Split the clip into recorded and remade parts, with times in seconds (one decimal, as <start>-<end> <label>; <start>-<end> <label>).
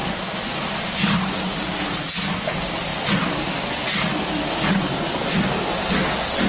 0.0-6.5 recorded